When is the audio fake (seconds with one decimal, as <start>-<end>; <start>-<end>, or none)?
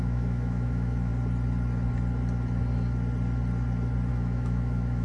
0.0-1.1; 4.1-5.0